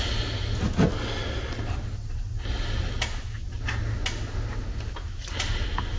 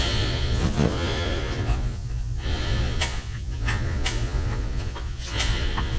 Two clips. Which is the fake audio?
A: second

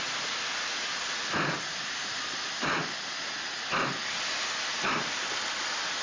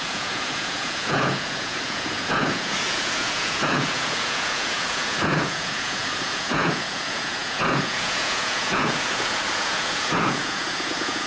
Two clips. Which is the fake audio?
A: second